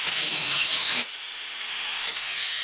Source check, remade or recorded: remade